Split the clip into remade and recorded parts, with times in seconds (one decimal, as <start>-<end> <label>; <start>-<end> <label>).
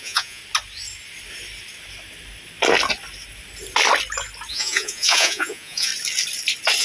0.0-0.4 remade; 0.4-4.5 recorded; 4.5-5.9 remade; 5.9-6.8 recorded